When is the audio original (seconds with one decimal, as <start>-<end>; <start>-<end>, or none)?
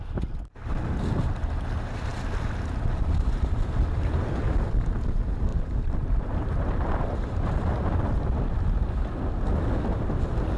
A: 0.0-10.6